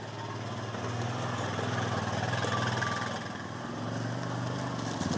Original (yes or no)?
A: yes